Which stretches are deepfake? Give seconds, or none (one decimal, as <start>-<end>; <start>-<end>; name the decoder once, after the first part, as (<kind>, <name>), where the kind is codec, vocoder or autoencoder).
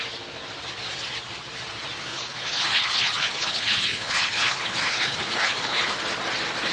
2.0-6.0 (codec, HILCodec)